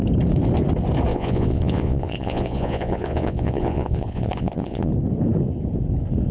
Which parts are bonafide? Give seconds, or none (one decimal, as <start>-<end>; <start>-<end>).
0.0-1.1; 4.9-6.3